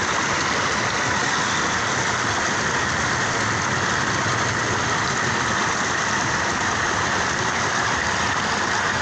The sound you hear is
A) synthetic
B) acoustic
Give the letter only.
B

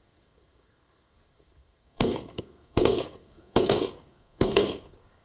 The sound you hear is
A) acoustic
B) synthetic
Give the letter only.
B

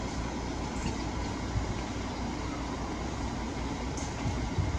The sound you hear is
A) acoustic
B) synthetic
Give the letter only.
A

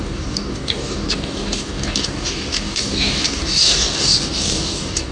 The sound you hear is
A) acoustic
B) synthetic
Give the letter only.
B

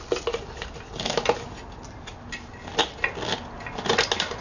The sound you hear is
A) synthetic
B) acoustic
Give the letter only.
B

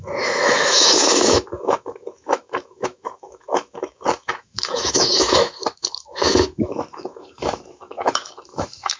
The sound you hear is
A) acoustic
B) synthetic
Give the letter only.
B